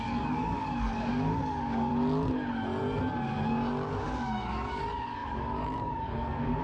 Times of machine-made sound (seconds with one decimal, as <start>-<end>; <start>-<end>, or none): 0.0-1.9; 3.9-6.6